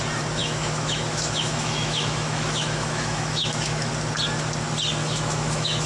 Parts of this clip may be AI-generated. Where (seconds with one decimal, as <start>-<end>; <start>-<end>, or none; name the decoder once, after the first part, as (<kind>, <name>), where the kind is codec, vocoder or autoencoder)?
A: 0.4-3.9 (autoencoder, DAC-VAE); 5.0-5.9